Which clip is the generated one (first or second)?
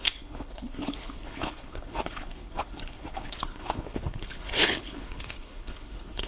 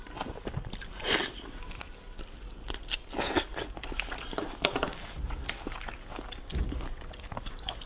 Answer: first